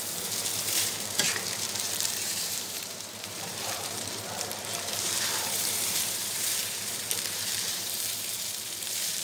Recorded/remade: remade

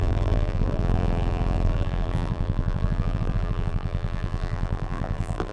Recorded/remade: remade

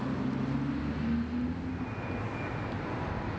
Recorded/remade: recorded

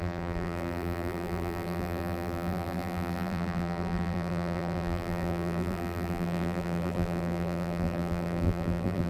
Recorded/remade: remade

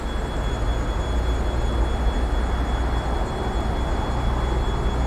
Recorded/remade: recorded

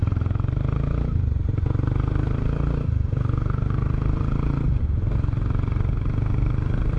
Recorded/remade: remade